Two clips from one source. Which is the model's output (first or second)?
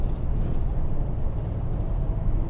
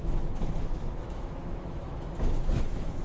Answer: second